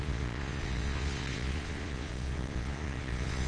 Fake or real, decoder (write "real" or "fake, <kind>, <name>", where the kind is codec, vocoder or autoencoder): fake, vocoder, Vocos